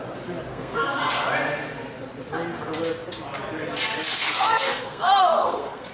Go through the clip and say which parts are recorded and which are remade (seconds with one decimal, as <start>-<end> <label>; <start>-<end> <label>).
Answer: 0.0-0.5 recorded; 0.5-1.0 remade; 1.0-4.2 recorded; 4.2-5.9 remade